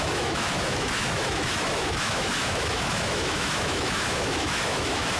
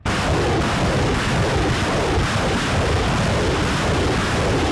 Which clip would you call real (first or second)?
second